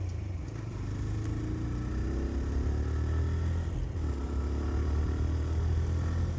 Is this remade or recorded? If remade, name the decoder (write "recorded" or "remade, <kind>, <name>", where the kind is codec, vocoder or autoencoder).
recorded